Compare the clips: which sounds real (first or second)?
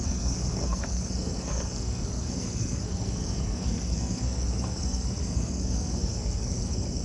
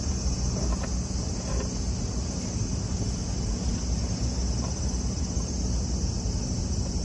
second